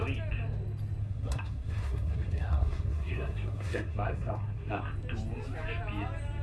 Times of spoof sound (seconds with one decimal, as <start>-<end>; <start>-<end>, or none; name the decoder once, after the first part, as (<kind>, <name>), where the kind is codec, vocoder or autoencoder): 1.0-4.8 (codec, SNAC)